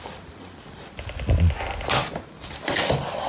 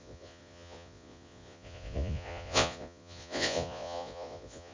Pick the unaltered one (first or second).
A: first